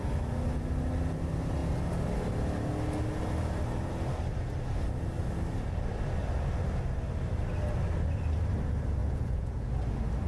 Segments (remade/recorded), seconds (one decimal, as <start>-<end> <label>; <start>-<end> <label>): 0.0-9.0 recorded; 9.0-9.7 remade; 9.7-10.3 recorded